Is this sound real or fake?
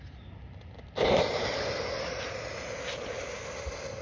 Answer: real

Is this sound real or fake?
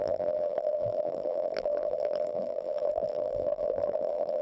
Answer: fake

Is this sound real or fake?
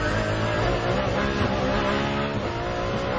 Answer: real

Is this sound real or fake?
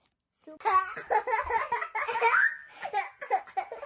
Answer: real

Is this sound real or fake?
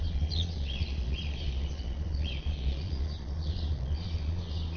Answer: fake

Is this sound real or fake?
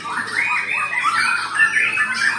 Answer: real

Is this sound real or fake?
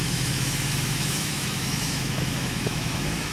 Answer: fake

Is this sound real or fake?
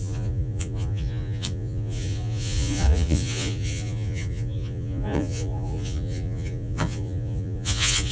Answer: fake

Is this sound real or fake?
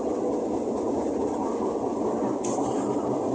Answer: real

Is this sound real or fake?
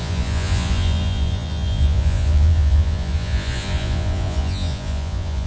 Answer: fake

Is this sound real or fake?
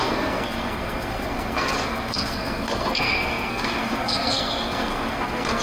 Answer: fake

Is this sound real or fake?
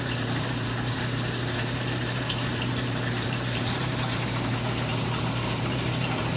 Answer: fake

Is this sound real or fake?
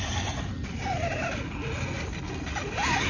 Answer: real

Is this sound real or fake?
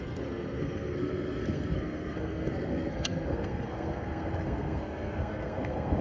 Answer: fake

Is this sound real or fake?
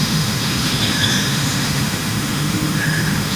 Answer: fake